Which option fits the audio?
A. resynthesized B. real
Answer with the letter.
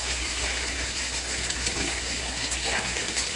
A